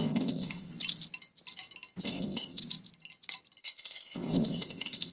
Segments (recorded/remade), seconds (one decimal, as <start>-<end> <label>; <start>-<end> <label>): 0.0-0.7 remade; 0.7-2.0 recorded; 2.0-2.6 remade; 2.6-3.6 recorded; 3.6-5.1 remade